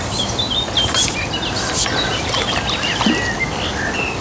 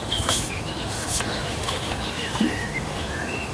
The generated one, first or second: second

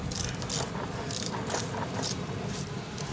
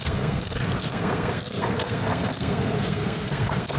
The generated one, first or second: second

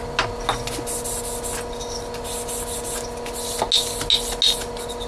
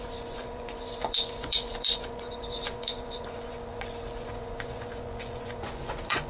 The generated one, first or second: second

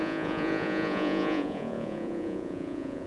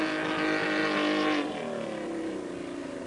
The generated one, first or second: first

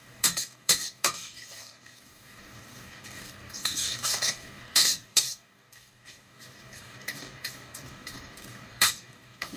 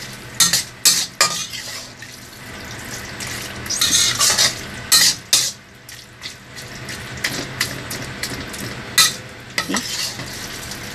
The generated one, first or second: first